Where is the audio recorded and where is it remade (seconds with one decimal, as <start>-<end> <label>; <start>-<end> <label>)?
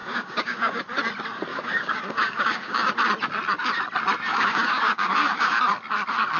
0.0-0.8 remade; 0.8-1.5 recorded; 1.5-2.9 remade; 2.9-4.3 recorded; 4.3-5.6 remade; 5.6-6.4 recorded